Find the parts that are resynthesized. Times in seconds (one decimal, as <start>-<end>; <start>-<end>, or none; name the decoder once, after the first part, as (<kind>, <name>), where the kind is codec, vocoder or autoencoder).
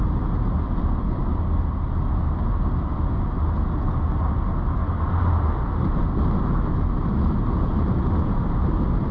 1.2-1.9 (vocoder, BigVGAN v2)